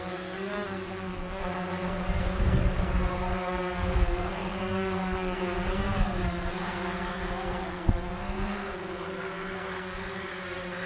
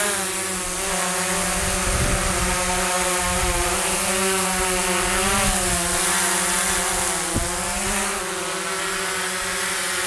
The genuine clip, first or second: second